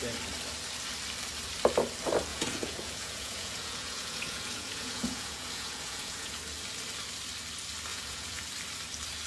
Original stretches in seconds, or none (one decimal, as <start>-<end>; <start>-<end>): 0.0-2.3; 6.4-7.9; 8.4-9.3